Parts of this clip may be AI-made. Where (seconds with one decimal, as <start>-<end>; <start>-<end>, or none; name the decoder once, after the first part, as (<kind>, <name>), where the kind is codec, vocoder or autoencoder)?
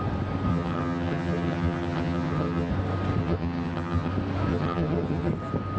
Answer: 0.5-2.7 (vocoder, HiFi-GAN); 3.2-4.1; 4.5-5.3